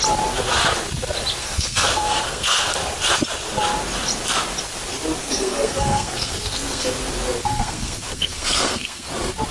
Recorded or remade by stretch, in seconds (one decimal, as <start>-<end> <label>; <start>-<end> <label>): 0.0-1.4 recorded; 1.4-2.7 remade; 2.7-5.2 recorded; 5.2-7.0 remade; 7.0-7.4 recorded; 7.4-9.1 remade; 9.1-9.5 recorded